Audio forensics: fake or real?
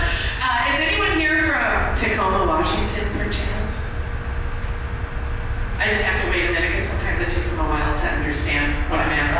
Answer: real